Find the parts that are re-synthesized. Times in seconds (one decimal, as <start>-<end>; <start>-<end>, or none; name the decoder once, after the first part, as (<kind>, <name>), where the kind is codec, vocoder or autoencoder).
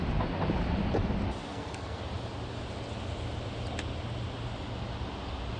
1.5-2.0 (codec, SNAC)